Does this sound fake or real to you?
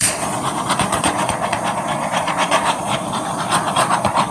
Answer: fake